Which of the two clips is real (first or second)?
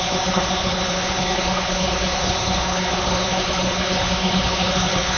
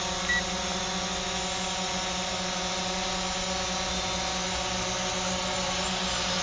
second